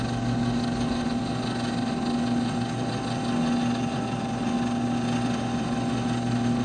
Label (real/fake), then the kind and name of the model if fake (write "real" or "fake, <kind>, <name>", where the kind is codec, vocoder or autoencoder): real